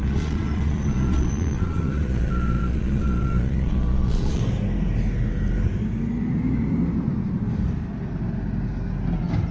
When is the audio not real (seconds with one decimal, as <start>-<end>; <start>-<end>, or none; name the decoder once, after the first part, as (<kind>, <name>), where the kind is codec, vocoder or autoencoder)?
0.0-4.4 (vocoder, Vocos)